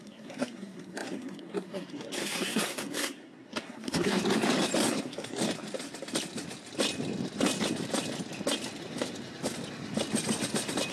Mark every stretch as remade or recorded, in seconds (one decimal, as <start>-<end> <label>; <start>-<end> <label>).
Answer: 0.0-4.2 remade; 4.2-4.9 recorded; 4.9-5.4 remade; 5.4-10.9 recorded